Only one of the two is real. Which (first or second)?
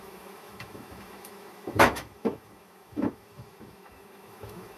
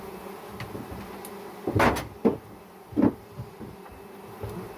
second